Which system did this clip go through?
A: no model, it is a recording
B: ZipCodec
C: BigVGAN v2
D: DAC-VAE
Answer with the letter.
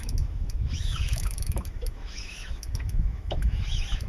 D